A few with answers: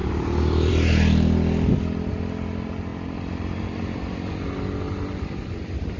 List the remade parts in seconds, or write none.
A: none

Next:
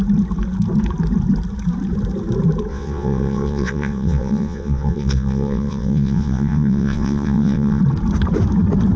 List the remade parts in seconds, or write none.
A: 2.7-7.8

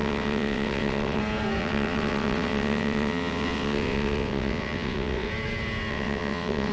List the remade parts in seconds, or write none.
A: 0.0-1.2; 1.6-5.3; 5.9-6.7

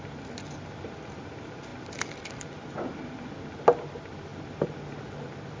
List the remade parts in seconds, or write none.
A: none

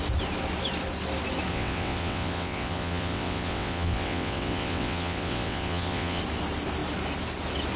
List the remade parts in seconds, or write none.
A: 1.5-6.2